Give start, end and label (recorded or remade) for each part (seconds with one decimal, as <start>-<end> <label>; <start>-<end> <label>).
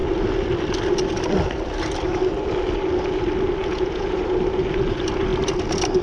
0.0-3.6 recorded; 3.6-4.2 remade; 4.2-6.0 recorded